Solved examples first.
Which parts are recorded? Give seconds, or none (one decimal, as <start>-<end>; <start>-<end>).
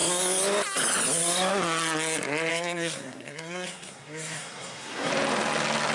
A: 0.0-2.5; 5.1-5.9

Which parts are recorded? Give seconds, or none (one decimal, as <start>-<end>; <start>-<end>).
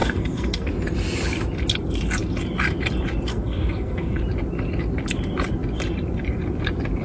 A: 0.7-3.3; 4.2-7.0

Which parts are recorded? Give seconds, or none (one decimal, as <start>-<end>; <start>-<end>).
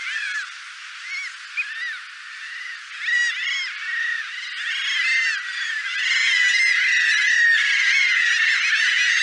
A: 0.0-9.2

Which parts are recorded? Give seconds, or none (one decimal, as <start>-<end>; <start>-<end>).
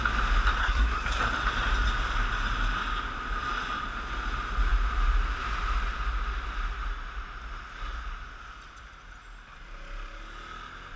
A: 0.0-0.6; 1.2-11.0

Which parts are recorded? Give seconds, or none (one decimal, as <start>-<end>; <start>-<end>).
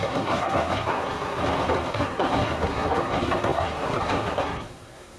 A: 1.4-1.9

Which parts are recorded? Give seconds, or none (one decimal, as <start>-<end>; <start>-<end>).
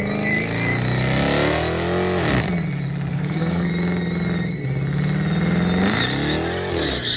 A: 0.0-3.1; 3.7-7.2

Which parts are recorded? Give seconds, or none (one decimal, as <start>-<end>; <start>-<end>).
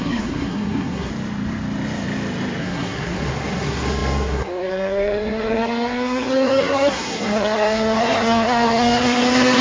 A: 1.1-2.6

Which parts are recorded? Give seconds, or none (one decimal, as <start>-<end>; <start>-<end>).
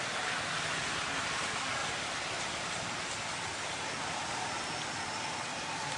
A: 0.0-6.0